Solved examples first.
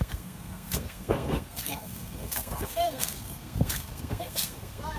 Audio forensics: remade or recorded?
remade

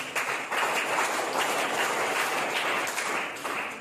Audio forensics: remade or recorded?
recorded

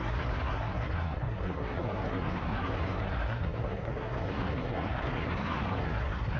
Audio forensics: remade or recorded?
remade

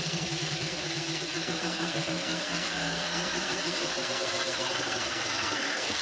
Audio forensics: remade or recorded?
remade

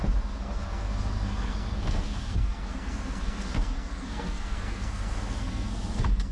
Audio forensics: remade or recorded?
remade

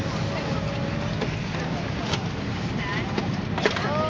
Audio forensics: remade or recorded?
recorded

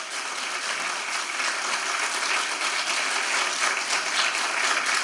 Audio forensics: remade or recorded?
recorded